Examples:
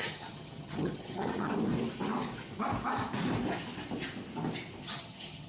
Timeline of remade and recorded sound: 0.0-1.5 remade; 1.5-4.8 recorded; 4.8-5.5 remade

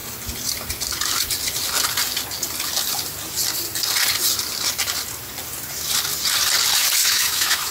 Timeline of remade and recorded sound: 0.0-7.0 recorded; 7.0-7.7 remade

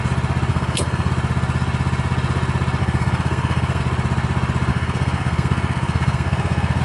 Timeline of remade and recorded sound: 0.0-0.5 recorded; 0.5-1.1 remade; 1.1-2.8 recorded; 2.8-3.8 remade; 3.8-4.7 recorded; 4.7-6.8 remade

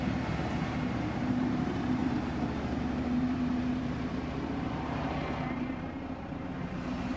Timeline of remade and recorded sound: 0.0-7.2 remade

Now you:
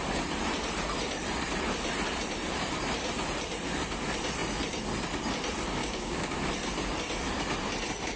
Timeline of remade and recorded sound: 0.0-5.8 recorded; 5.8-6.3 remade; 6.3-8.2 recorded